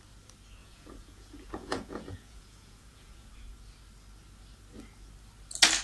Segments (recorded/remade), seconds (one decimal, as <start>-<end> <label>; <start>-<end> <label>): 0.0-0.6 recorded; 0.6-3.3 remade; 3.3-5.8 recorded